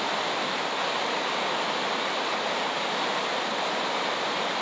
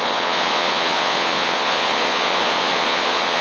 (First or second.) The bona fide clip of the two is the first